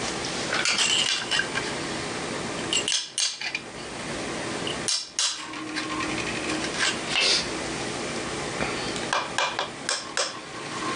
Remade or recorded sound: recorded